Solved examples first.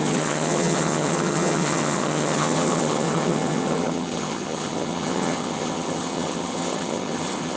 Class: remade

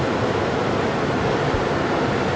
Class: recorded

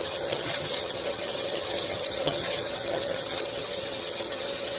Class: remade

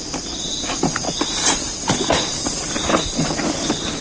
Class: recorded